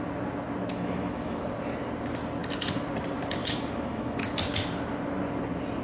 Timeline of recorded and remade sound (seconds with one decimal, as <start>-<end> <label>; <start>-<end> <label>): 0.0-0.7 recorded; 0.7-1.4 remade; 1.4-3.4 recorded; 3.4-4.3 remade; 4.3-5.8 recorded